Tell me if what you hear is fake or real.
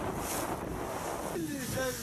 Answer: real